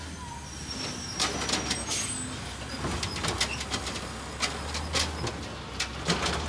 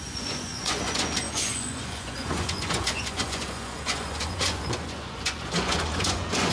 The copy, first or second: second